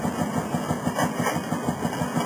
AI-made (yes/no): no